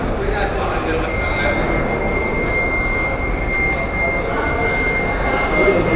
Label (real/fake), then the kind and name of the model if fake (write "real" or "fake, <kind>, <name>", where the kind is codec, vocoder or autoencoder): real